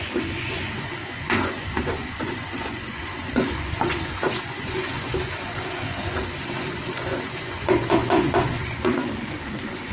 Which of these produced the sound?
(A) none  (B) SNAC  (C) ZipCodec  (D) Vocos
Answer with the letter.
D